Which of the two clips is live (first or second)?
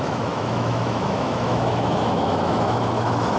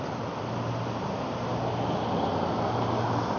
second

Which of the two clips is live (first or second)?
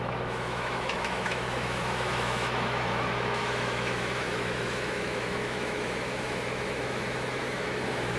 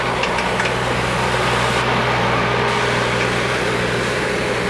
second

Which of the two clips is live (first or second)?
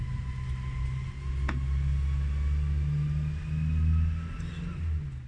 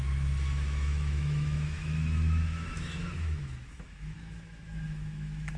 first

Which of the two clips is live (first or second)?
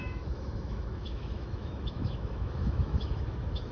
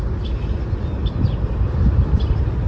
second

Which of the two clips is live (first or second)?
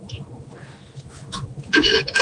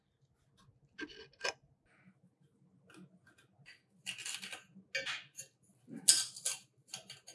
second